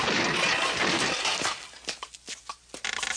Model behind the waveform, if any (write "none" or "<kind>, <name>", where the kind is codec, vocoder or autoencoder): none